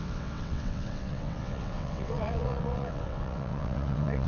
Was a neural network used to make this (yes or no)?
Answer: yes